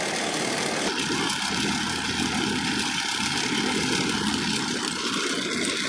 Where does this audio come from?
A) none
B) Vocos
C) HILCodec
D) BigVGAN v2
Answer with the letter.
A